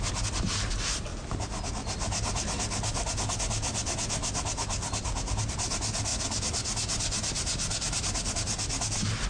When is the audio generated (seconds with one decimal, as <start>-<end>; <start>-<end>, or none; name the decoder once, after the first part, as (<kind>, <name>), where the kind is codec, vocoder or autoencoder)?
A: none